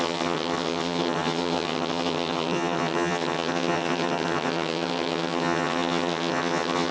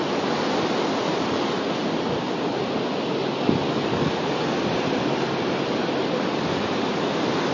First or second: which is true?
second